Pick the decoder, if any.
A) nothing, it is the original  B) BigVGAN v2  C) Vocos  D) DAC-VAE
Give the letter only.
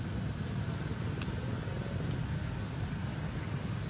A